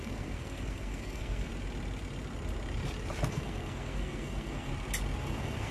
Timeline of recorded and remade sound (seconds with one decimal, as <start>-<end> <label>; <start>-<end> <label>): 0.0-1.5 remade; 1.5-3.3 recorded; 3.3-4.7 remade; 4.7-5.2 recorded; 5.2-5.7 remade